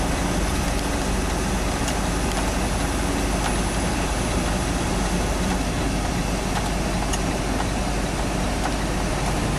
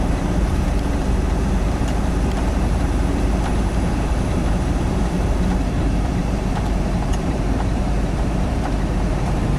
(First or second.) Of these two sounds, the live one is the first